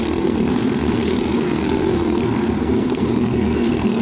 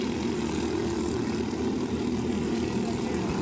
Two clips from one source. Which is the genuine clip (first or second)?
second